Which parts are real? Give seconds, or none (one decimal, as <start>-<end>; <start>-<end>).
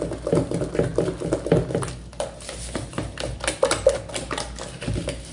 0.0-5.3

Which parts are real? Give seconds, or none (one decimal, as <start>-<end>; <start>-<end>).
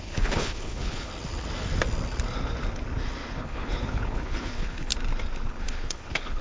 1.1-3.3; 4.9-5.6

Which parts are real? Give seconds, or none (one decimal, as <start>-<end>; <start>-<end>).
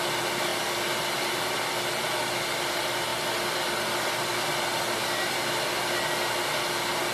0.0-7.1